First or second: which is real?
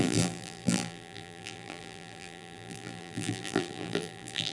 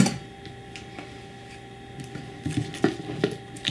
second